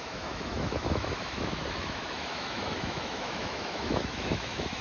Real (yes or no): no